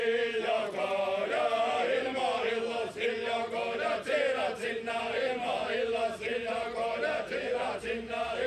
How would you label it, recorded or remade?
remade